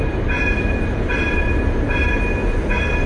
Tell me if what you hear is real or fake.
real